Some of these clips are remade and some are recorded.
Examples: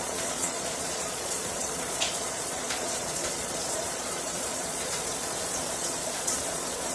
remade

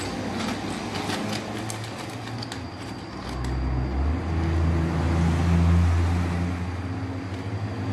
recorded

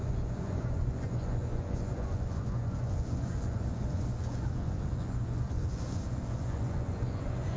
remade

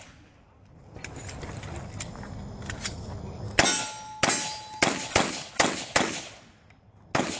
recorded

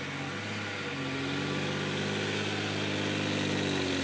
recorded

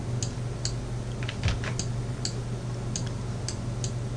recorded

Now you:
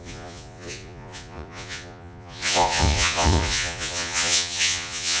remade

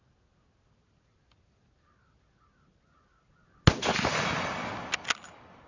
recorded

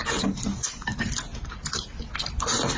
recorded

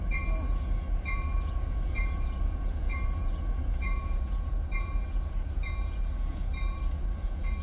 remade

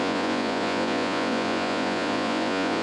remade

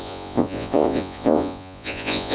remade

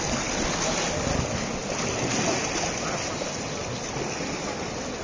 recorded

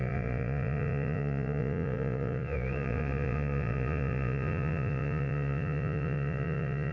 remade